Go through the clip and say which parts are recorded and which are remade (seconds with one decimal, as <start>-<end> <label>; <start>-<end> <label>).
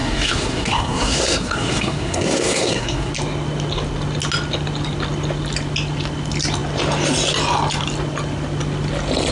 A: 0.0-3.1 remade; 3.1-9.3 recorded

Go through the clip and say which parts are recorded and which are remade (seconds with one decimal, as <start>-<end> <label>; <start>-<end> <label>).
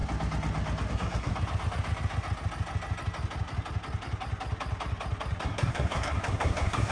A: 0.0-0.9 recorded; 0.9-1.3 remade; 1.3-5.4 recorded; 5.4-6.9 remade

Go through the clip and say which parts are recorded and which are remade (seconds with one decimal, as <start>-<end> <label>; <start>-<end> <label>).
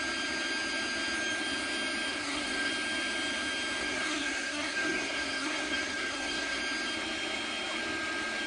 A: 0.0-2.1 recorded; 2.1-2.7 remade; 2.7-3.8 recorded; 3.8-6.6 remade; 6.6-8.5 recorded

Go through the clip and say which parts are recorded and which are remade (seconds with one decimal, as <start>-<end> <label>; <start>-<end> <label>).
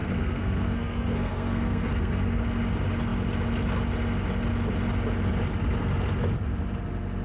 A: 0.0-2.4 remade; 2.4-7.2 recorded